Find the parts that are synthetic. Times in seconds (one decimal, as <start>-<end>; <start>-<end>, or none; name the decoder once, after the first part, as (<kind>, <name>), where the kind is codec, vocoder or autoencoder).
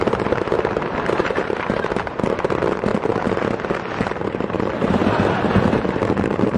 0.0-2.9 (vocoder, BigVGAN v2); 4.2-5.0; 5.7-6.6